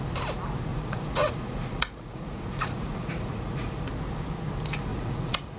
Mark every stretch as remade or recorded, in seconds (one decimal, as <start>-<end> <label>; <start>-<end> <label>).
0.0-0.7 recorded; 0.7-3.9 remade; 3.9-4.9 recorded; 4.9-5.6 remade